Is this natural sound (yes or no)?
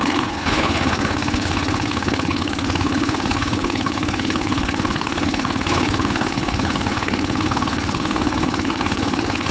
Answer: no